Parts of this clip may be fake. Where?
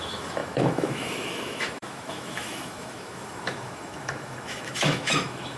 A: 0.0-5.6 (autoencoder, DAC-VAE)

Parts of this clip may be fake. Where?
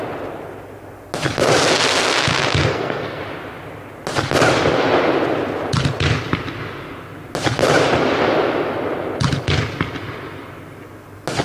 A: 2.7-3.2 (codec, SNAC)